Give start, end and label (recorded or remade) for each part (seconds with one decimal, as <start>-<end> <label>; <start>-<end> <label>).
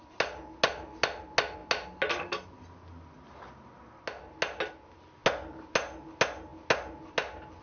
0.0-7.6 recorded